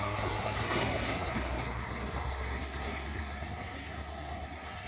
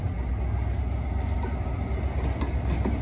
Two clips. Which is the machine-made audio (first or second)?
first